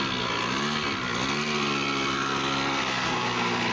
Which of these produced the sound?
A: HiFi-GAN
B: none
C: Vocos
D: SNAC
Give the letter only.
B